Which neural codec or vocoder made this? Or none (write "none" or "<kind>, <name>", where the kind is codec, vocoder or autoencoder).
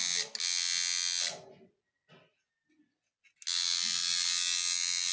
none